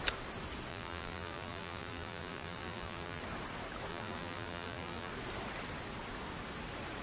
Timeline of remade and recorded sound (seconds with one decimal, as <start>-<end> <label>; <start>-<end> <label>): 0.0-0.7 recorded; 0.7-3.2 remade; 3.2-3.9 recorded; 3.9-5.1 remade; 5.1-7.0 recorded